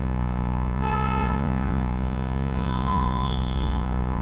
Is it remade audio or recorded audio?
remade